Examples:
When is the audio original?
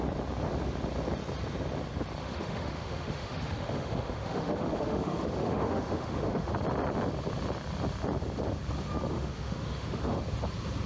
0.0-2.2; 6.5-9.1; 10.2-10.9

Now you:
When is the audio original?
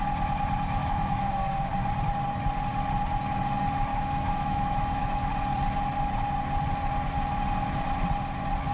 0.0-0.8; 1.4-3.9; 5.3-8.7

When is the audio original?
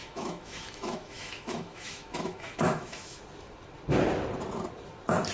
3.2-5.3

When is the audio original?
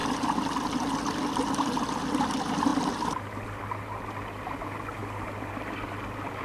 0.0-6.4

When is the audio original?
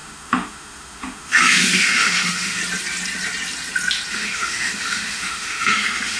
2.6-4.1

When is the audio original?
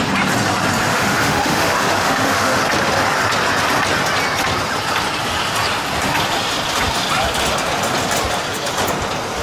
0.0-0.9; 2.6-9.4